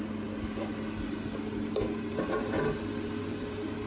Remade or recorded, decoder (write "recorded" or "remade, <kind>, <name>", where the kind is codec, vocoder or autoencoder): recorded